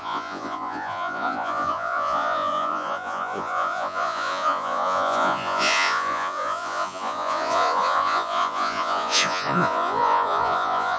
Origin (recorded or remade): remade